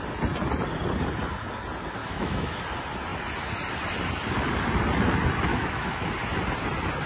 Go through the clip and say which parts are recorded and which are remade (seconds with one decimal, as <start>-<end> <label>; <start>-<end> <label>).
0.0-2.0 recorded; 2.0-2.6 remade; 2.6-5.5 recorded; 5.5-6.1 remade; 6.1-7.1 recorded